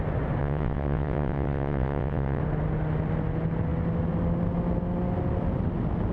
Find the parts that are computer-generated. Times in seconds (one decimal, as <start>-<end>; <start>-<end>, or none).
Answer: 0.4-2.4